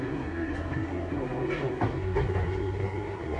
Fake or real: fake